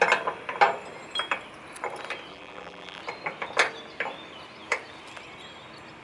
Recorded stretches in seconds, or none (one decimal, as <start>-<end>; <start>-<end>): 0.0-2.3; 3.0-6.0